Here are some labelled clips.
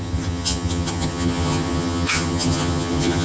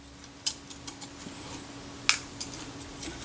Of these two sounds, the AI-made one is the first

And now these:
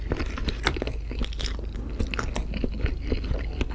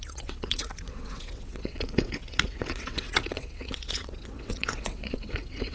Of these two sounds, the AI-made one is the second